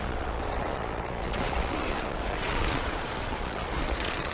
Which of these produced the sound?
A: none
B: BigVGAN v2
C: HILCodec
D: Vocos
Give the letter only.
D